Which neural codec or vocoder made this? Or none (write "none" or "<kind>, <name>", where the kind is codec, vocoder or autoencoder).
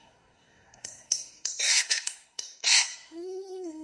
codec, SNAC